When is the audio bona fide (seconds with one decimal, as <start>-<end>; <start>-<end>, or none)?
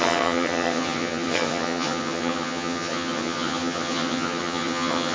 none